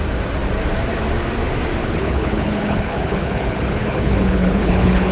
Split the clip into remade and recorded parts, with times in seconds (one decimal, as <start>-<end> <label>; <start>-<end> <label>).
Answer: 0.0-1.8 recorded; 1.8-5.1 remade